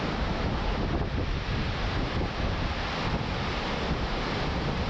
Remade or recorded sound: recorded